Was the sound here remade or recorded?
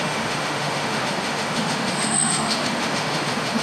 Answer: remade